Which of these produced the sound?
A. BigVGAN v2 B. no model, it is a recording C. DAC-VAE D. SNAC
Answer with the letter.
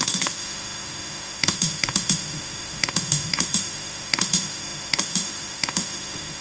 C